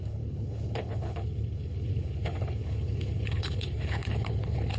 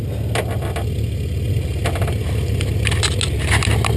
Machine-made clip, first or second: first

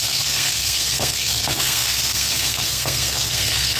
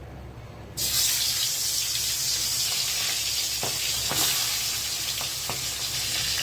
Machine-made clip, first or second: first